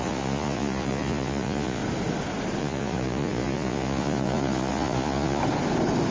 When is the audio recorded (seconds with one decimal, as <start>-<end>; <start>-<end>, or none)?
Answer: 1.8-2.6; 5.4-6.1